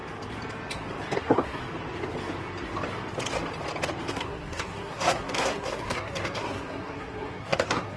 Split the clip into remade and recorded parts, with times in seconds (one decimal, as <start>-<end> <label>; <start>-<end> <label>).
0.0-1.2 recorded; 1.2-1.6 remade; 1.6-4.1 recorded; 4.1-8.0 remade